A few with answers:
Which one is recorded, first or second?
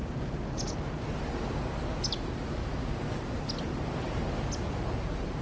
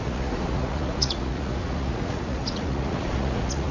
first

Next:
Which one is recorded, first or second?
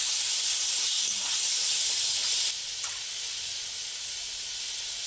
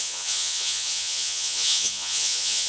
first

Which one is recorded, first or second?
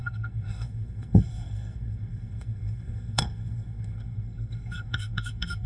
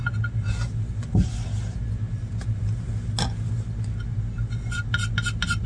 second